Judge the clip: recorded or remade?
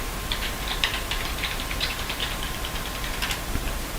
remade